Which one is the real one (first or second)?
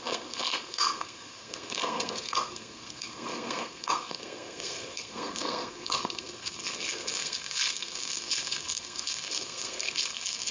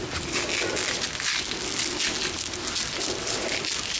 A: second